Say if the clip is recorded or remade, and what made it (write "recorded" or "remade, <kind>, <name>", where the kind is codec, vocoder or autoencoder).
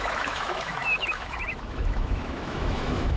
remade, autoencoder, DAC-VAE